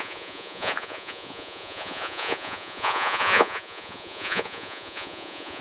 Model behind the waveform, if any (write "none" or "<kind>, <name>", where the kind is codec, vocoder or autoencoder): vocoder, Vocos